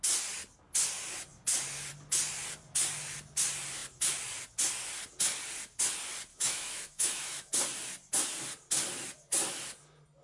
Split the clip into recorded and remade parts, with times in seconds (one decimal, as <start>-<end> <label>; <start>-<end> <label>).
0.0-6.3 recorded; 6.3-7.5 remade; 7.5-10.2 recorded